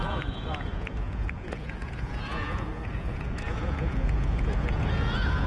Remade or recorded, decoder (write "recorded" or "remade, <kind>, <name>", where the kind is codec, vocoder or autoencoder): remade, vocoder, Vocos